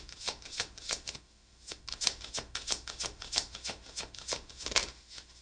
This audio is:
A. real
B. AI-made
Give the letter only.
B